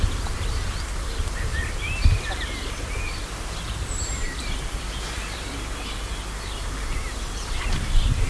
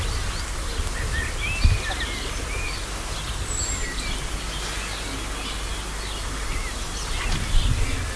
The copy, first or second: first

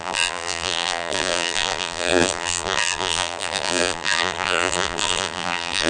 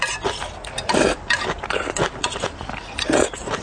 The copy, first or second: first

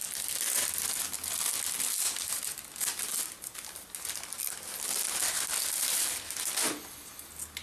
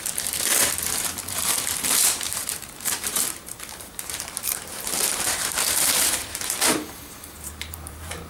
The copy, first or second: second